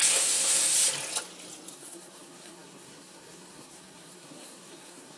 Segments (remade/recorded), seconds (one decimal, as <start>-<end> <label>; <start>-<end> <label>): 0.0-0.6 remade; 0.6-1.7 recorded; 1.7-5.2 remade